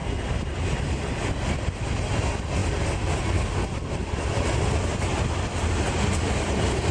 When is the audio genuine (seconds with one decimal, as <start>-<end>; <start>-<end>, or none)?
0.0-6.9